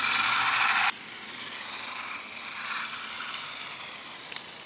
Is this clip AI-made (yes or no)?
yes